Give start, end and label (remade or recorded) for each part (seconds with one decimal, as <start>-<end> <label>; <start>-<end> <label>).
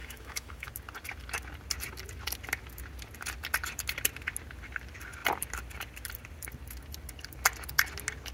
0.0-0.7 remade; 0.7-8.3 recorded